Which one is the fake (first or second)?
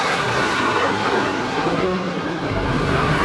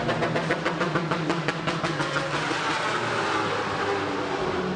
first